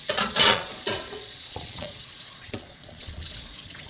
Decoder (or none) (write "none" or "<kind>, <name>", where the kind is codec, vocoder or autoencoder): vocoder, Vocos